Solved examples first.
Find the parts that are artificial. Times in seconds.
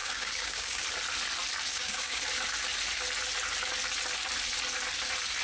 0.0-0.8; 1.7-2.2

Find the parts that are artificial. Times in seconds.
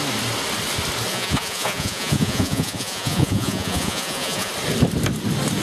1.1-4.5